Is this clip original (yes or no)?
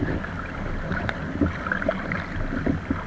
yes